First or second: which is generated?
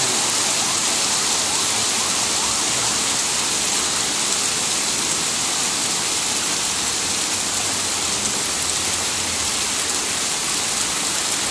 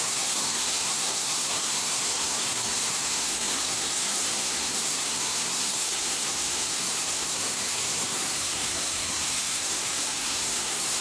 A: second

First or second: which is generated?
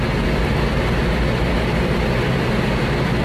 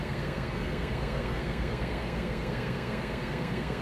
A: second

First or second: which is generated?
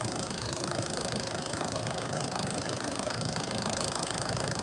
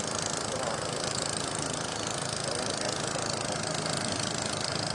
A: first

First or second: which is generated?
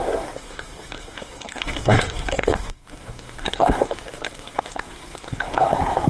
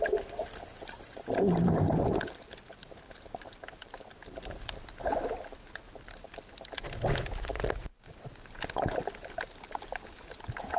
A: first